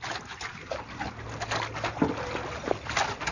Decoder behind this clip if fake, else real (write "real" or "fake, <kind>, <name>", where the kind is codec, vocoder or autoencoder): real